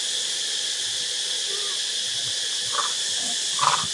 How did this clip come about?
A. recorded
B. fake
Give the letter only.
A